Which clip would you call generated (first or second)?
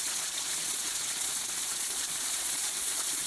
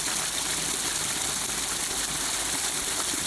first